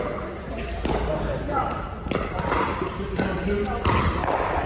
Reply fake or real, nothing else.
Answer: real